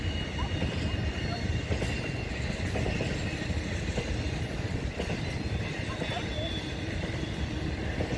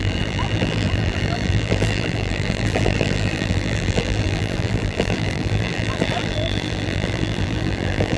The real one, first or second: first